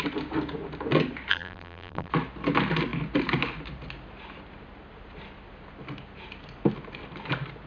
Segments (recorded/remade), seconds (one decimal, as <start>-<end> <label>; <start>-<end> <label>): 0.0-1.3 recorded; 1.3-2.1 remade; 2.1-7.7 recorded